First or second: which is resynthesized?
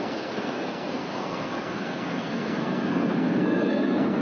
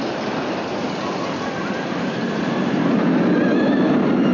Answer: first